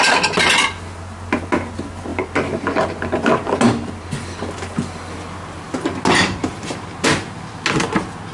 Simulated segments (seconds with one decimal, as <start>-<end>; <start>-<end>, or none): none

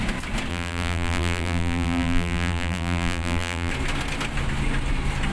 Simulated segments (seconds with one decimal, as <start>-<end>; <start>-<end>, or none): 0.5-3.7

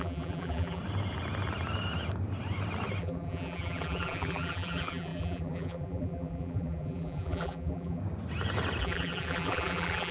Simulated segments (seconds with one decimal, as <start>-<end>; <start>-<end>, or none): 0.0-0.8; 3.0-8.0; 8.8-10.1

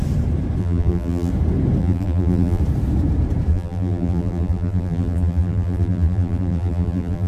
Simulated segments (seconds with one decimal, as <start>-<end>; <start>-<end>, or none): 0.6-1.3; 1.8-2.6; 3.5-7.3